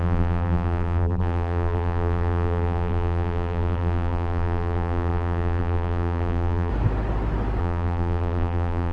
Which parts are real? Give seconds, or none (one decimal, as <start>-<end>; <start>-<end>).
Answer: 6.7-7.6